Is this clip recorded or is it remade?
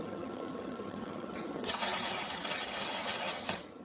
remade